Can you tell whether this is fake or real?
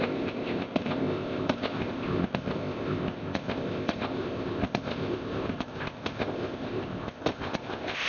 fake